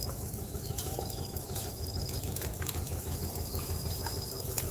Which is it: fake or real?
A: fake